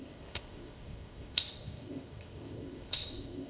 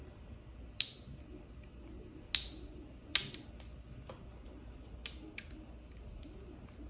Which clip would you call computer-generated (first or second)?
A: first